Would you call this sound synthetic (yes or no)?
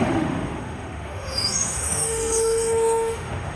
yes